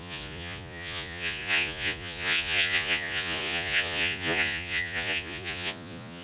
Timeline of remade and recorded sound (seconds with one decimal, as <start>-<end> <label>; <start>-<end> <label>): 0.0-6.2 remade